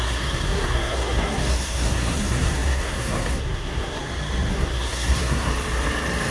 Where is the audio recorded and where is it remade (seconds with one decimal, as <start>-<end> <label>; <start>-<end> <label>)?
0.0-4.0 remade; 4.0-4.5 recorded; 4.5-5.5 remade; 5.5-6.3 recorded